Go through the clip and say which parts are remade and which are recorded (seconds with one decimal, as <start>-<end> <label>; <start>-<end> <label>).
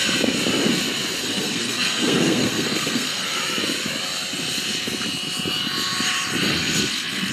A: 0.0-1.2 recorded; 1.2-3.4 remade; 3.4-6.5 recorded; 6.5-7.3 remade